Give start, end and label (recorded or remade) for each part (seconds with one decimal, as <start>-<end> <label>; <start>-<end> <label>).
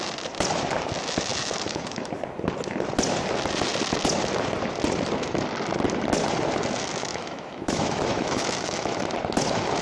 0.0-1.3 recorded; 1.3-2.1 remade; 2.1-7.1 recorded; 7.1-9.0 remade; 9.0-9.8 recorded